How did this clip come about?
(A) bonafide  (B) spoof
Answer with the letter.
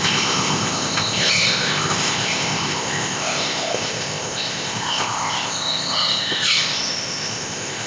B